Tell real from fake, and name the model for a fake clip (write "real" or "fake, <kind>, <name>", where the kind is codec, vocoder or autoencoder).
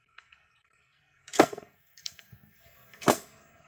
fake, codec, SNAC